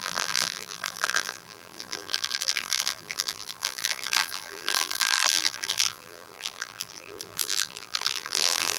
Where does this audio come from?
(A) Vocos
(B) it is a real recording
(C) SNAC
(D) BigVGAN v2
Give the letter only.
D